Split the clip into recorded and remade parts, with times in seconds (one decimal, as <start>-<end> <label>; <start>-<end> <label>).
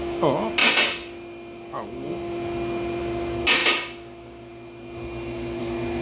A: 0.0-6.0 recorded